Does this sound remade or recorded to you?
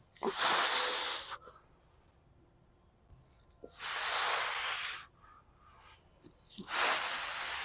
recorded